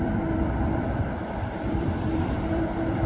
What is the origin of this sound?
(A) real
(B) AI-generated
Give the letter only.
B